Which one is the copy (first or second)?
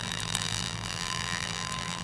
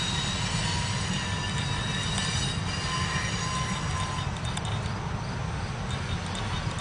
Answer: first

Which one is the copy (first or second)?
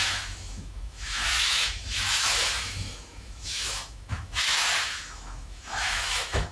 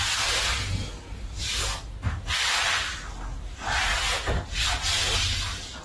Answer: first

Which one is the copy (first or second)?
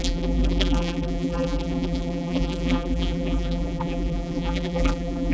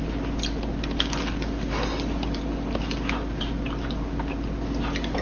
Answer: first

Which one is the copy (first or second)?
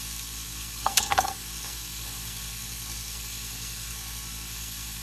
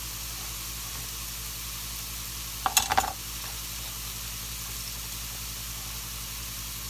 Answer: first